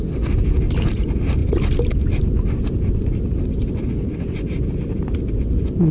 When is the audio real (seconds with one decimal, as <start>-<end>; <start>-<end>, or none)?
0.0-5.9